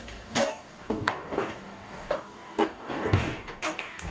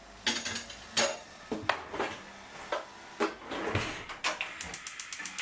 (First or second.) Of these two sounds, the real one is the second